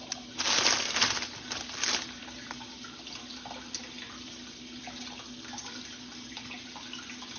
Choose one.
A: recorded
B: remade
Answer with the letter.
A